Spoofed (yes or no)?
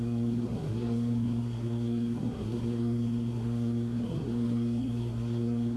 yes